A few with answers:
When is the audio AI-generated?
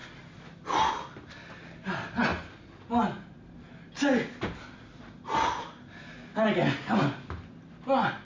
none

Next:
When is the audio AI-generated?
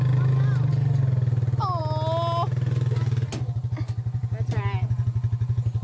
none